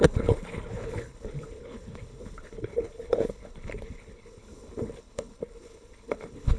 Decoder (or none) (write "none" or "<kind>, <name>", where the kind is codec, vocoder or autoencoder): codec, HILCodec